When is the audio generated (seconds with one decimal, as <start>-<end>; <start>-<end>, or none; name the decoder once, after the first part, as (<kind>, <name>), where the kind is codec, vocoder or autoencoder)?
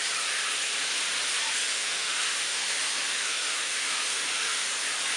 1.6-4.7 (autoencoder, DAC-VAE)